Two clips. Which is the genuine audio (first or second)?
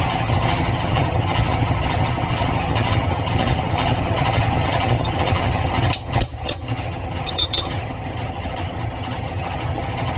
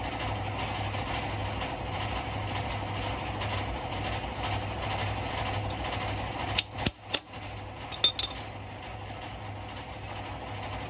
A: second